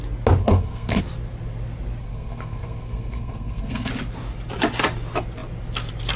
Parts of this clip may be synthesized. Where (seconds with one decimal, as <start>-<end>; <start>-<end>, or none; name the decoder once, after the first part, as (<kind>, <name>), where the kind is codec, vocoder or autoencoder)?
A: 0.4-1.0 (codec, SNAC); 2.0-3.9